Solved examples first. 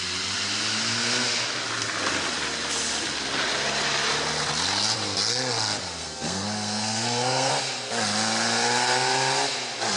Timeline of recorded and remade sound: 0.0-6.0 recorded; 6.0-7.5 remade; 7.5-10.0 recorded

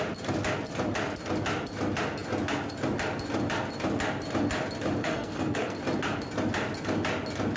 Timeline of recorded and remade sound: 0.0-5.0 recorded; 5.0-5.8 remade; 5.8-7.6 recorded

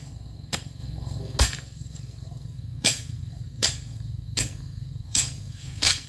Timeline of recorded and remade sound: 0.0-6.1 remade

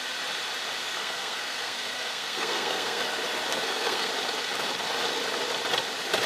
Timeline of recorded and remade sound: 0.0-0.8 recorded; 0.8-3.0 remade; 3.0-3.5 recorded; 3.5-4.1 remade; 4.1-6.3 recorded

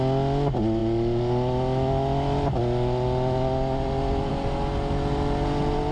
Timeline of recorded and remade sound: 0.0-5.9 recorded

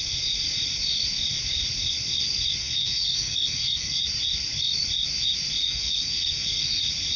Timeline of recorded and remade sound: 0.0-2.6 recorded; 2.6-4.0 remade; 4.0-5.6 recorded; 5.6-6.8 remade; 6.8-7.2 recorded

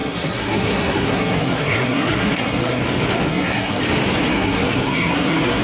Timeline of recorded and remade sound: 0.0-2.8 remade; 2.8-3.3 recorded; 3.3-3.8 remade; 3.8-4.3 recorded; 4.3-5.6 remade

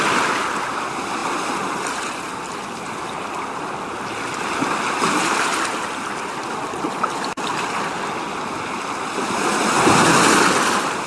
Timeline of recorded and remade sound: 0.0-11.1 recorded